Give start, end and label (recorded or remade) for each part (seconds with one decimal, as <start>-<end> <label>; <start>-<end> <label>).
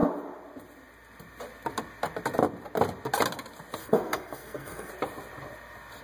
0.0-3.8 recorded; 3.8-4.9 remade; 4.9-6.0 recorded